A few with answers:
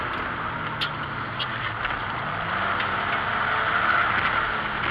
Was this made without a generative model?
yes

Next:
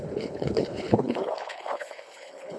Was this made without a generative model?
no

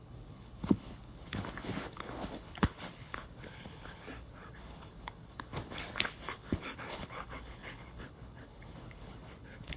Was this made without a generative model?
no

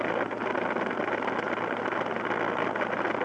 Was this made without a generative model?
yes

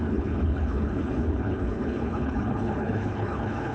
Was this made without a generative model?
no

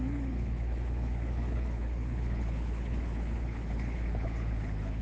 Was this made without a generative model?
no